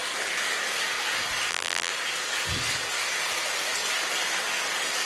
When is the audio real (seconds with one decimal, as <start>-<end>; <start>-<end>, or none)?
0.0-1.5; 1.9-5.1